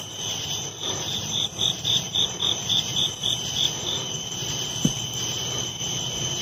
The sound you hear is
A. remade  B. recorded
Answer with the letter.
A